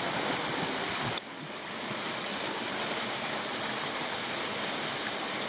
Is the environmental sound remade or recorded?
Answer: recorded